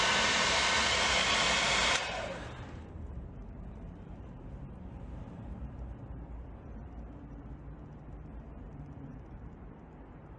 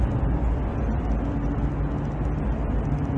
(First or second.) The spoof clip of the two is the first